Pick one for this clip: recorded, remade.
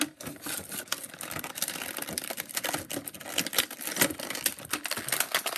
recorded